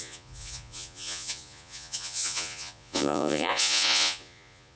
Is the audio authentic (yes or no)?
no